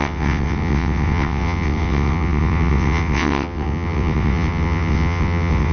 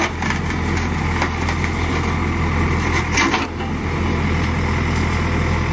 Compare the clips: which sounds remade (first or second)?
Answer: first